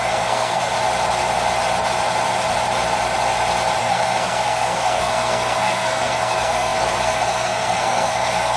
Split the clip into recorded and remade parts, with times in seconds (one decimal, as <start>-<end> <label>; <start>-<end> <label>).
0.0-0.7 remade; 0.7-3.8 recorded; 3.8-8.6 remade